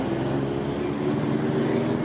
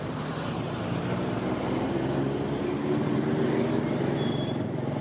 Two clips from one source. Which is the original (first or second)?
first